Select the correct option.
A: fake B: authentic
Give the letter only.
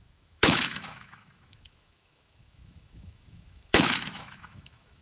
A